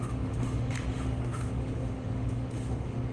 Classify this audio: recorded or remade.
remade